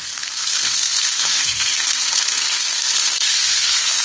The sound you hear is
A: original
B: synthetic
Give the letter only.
B